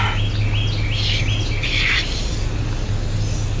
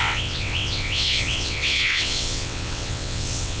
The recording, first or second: first